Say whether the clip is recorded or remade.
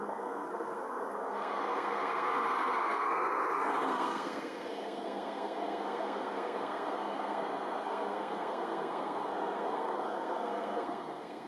remade